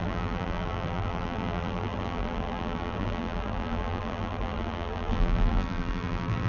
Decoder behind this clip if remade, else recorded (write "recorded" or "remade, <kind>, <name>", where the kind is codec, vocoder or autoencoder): remade, vocoder, BigVGAN v2